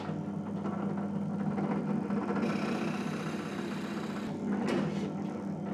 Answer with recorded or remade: recorded